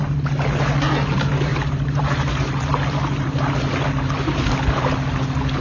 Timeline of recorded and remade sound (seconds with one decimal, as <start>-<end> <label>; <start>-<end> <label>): 0.0-5.6 recorded